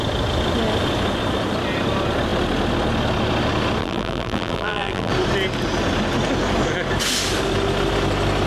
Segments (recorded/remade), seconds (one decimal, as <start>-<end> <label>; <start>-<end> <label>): 0.0-3.8 recorded; 3.8-5.1 remade; 5.1-8.5 recorded